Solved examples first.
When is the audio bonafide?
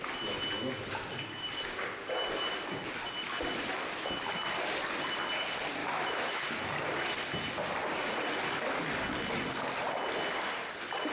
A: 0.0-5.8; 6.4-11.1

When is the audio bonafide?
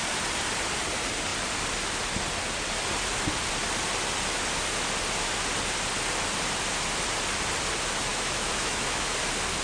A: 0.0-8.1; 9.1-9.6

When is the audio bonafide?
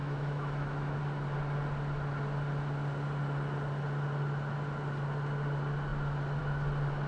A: 1.0-7.1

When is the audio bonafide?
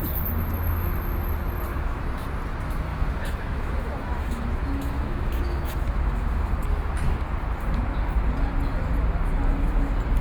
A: 0.0-1.7; 2.3-2.9; 6.5-10.2